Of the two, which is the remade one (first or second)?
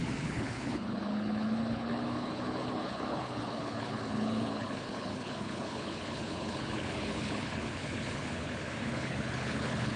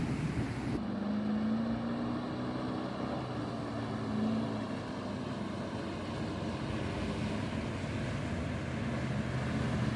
first